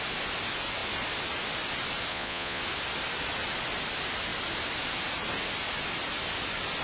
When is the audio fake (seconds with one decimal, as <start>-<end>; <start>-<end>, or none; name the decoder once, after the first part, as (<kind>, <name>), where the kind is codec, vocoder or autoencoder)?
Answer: 2.1-2.6 (vocoder, Vocos)